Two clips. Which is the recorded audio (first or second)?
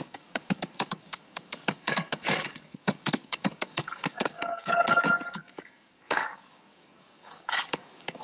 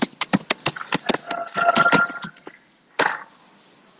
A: second